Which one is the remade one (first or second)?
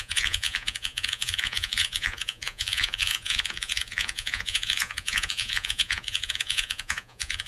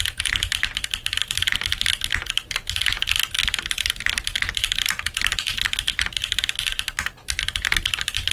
first